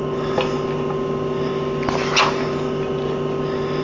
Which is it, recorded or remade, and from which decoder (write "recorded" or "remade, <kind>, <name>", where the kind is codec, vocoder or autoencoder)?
recorded